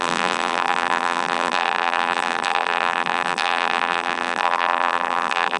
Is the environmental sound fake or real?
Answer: fake